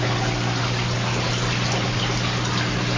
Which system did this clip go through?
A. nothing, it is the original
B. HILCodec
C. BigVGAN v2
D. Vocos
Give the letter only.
A